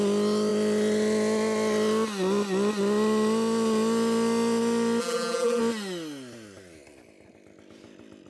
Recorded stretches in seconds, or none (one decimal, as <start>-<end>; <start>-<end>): 0.0-5.0; 5.6-8.3